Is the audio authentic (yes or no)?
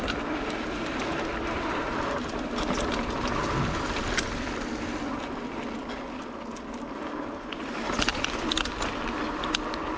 yes